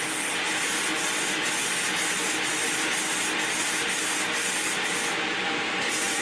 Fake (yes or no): no